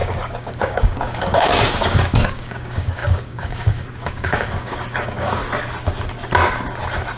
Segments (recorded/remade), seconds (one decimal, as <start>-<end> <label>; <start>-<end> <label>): 0.0-5.4 remade; 5.4-7.2 recorded